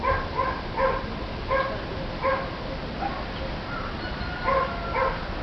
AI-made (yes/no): no